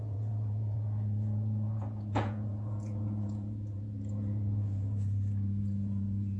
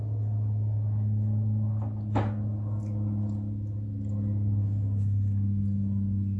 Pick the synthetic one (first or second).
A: first